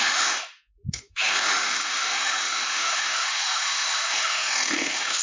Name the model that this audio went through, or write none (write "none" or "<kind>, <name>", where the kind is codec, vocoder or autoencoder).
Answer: autoencoder, DAC-VAE